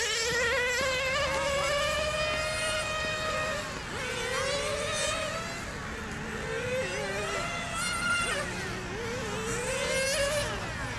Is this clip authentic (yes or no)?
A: yes